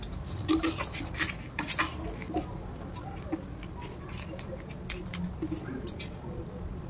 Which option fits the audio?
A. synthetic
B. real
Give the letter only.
B